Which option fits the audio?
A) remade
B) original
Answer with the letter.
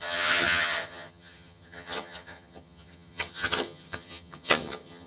A